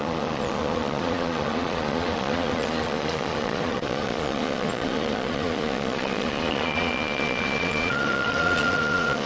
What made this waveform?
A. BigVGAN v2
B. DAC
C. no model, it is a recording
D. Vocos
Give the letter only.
D